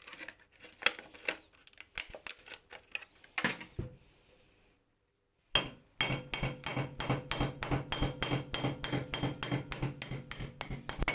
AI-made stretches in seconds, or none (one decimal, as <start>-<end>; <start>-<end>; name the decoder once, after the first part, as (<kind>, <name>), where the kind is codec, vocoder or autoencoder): none